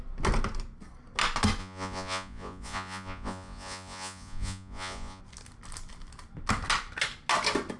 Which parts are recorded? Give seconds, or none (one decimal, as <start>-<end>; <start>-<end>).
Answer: 0.0-1.6; 5.2-7.8